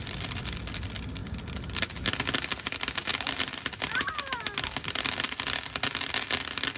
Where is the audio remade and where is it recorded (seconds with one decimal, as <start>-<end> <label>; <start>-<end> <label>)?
0.0-6.8 recorded